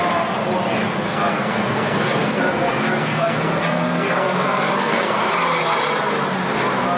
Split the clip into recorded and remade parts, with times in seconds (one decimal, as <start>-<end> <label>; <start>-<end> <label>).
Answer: 0.0-1.1 recorded; 1.1-5.3 remade; 5.3-7.0 recorded